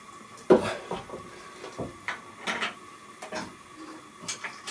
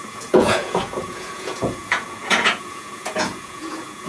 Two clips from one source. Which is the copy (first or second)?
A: second